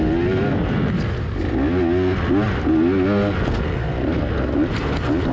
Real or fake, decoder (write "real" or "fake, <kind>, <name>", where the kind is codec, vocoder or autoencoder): real